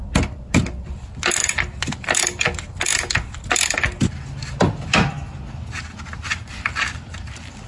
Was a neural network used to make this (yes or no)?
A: no